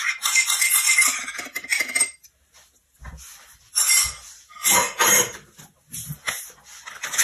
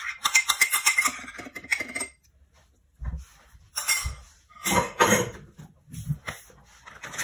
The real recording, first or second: first